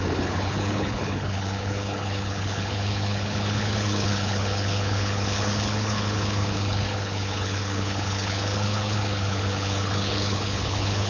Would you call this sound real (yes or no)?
no